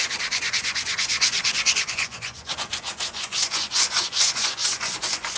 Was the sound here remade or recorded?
remade